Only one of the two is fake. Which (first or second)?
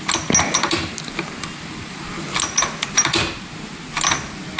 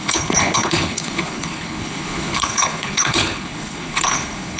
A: second